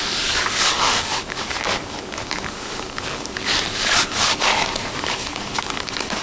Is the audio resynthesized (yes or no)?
yes